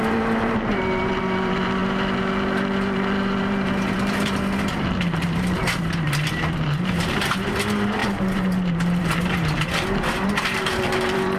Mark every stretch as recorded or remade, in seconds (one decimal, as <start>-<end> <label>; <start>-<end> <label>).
0.0-11.4 remade